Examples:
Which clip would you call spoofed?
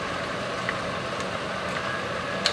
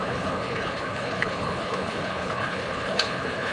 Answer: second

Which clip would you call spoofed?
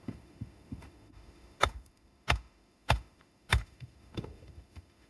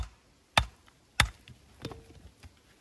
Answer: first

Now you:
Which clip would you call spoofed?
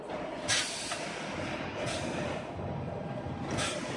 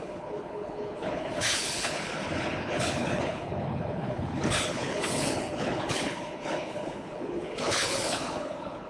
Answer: second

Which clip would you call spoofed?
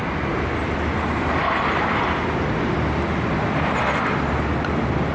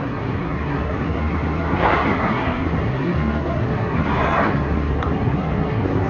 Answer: second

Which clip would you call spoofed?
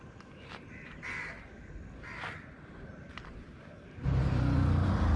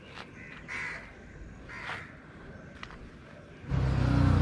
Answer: first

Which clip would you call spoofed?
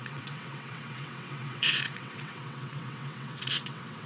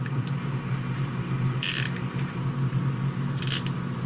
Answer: first